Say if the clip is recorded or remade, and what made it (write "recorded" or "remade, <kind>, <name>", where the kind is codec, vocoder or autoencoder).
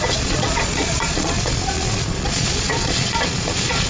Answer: remade, vocoder, Vocos